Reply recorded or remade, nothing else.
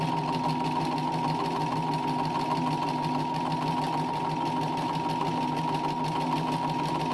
recorded